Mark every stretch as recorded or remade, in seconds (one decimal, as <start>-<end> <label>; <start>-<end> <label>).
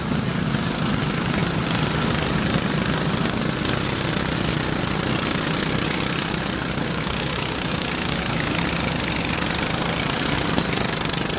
0.0-6.8 recorded; 6.8-8.6 remade; 8.6-11.4 recorded